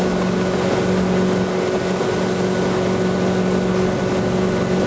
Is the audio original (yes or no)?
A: yes